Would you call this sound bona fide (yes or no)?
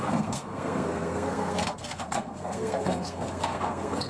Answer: no